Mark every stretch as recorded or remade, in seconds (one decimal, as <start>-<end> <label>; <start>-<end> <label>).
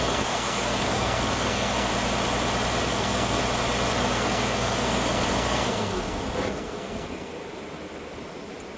0.0-1.9 remade; 1.9-2.9 recorded; 2.9-3.4 remade; 3.4-3.9 recorded; 3.9-7.4 remade; 7.4-8.8 recorded